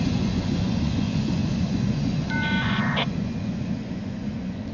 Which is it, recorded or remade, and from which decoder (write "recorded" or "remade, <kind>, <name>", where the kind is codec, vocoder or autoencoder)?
remade, vocoder, Vocos